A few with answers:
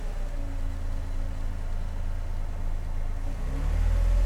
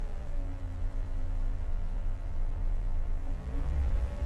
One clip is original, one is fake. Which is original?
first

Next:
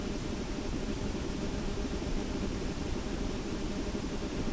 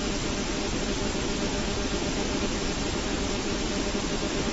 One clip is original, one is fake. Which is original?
second